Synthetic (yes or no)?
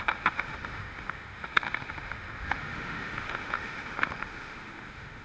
yes